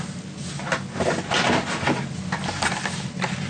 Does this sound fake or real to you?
real